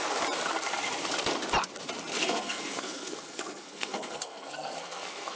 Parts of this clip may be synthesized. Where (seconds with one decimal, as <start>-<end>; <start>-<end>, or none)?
2.1-5.4